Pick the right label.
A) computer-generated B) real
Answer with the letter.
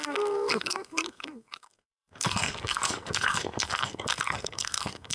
A